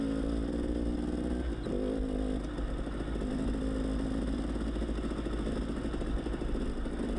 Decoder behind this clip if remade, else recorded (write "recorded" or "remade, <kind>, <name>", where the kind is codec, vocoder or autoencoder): recorded